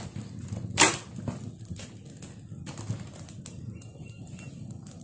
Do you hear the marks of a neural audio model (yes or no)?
no